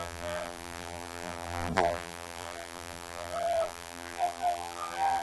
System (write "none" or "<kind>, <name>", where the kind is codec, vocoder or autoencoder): vocoder, BigVGAN v2